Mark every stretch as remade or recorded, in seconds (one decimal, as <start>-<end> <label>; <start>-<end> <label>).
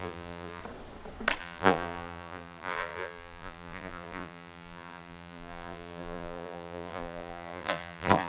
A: 0.0-0.6 remade; 0.6-1.4 recorded; 1.4-8.3 remade